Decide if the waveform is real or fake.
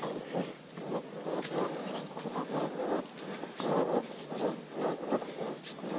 real